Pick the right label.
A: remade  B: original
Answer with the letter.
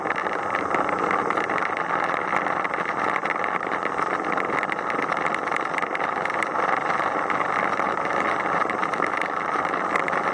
A